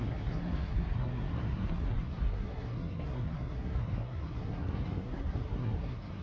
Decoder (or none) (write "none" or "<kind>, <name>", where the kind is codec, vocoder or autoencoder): codec, SNAC